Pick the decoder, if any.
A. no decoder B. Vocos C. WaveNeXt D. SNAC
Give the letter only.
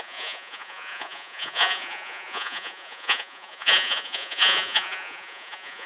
B